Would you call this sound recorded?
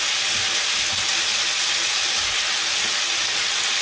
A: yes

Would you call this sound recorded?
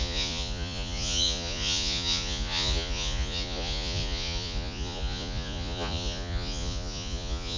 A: no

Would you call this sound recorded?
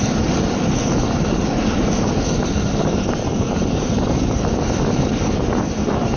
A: yes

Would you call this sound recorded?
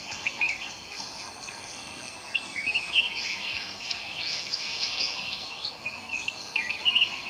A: no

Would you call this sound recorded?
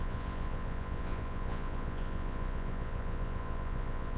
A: no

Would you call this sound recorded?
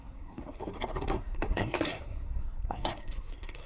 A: no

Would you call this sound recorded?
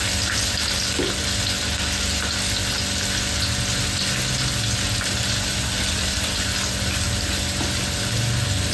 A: yes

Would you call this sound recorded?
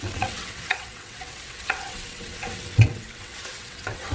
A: no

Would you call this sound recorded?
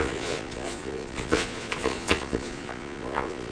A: no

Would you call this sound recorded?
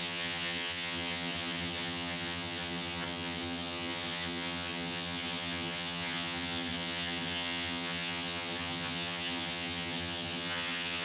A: no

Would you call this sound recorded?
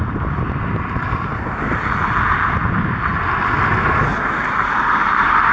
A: yes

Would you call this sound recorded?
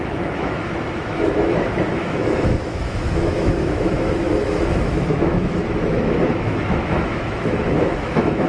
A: no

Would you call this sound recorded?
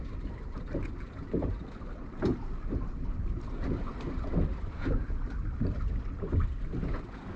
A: yes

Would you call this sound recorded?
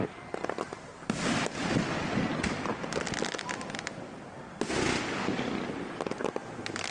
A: yes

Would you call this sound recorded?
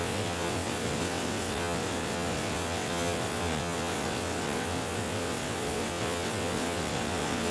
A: no